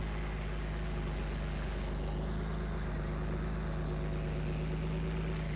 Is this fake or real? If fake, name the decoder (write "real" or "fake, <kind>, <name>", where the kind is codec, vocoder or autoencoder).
real